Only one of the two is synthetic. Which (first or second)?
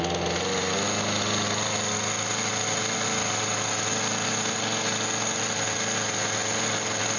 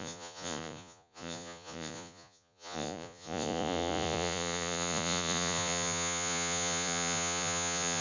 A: second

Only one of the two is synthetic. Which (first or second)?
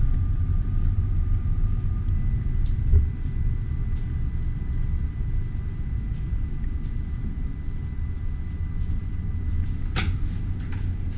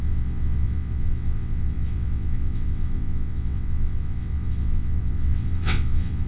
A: second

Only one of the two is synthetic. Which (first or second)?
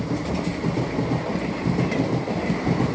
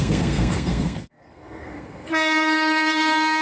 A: second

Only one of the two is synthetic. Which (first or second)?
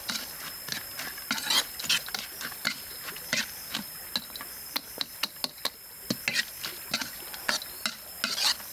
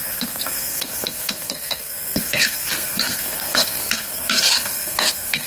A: second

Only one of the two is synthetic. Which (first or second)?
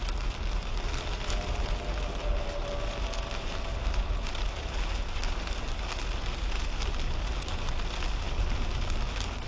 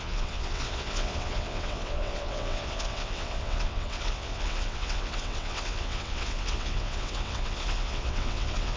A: second